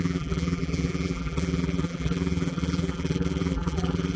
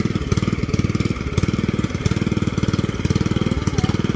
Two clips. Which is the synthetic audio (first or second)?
first